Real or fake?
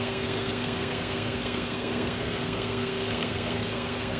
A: fake